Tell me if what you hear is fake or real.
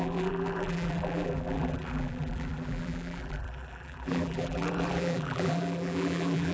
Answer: fake